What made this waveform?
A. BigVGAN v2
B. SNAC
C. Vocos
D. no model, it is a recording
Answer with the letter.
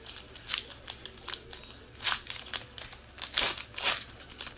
D